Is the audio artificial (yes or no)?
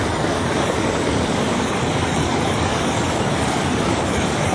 yes